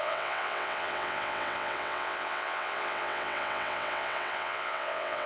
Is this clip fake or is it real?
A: fake